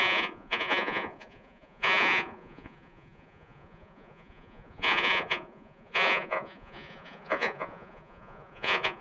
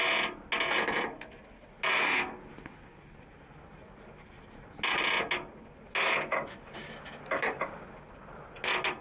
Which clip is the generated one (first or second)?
first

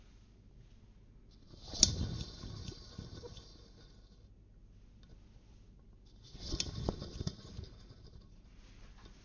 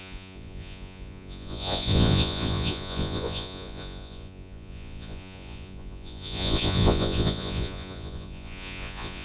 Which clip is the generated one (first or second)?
second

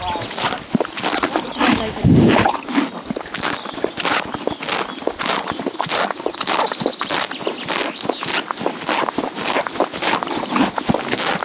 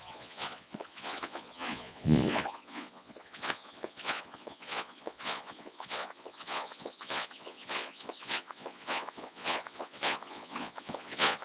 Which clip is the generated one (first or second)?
second